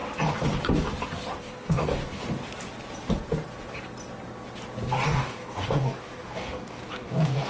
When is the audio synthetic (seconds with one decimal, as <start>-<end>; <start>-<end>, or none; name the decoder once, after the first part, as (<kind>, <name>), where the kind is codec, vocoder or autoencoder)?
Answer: 1.4-2.0 (codec, DAC); 5.1-7.5